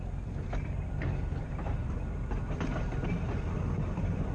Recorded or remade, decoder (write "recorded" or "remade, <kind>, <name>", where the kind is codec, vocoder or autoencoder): recorded